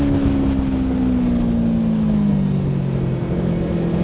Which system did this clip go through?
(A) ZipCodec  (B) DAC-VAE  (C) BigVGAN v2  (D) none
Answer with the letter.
D